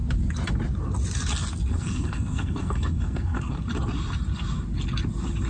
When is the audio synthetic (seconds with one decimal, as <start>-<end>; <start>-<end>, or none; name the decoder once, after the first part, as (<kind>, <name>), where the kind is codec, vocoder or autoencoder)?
1.7-3.6 (codec, SNAC)